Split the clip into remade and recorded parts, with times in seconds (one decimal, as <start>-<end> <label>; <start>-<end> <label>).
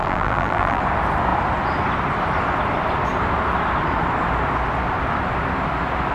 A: 0.0-0.8 remade; 0.8-6.1 recorded